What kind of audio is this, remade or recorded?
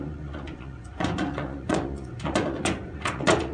remade